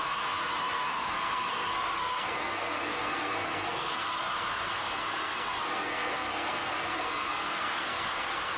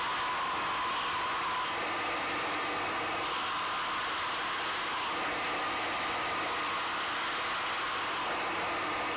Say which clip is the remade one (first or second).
first